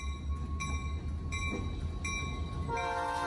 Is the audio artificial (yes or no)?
no